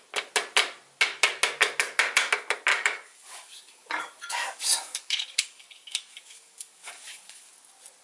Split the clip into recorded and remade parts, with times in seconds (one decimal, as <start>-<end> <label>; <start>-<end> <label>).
0.0-2.7 recorded; 2.7-7.5 remade; 7.5-8.0 recorded